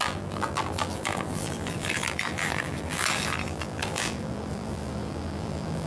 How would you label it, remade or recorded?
remade